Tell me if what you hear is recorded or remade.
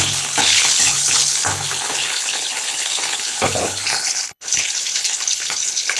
remade